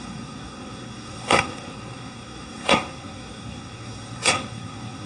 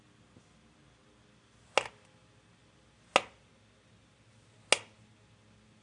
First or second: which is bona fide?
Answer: second